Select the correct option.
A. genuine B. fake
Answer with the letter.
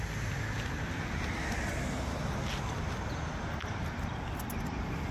A